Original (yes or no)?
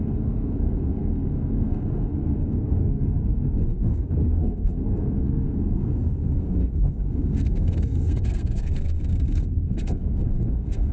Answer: no